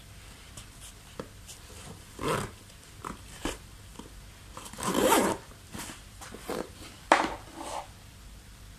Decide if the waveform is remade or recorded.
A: remade